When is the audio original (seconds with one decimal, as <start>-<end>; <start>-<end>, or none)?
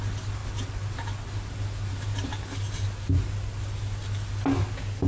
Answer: 0.0-5.1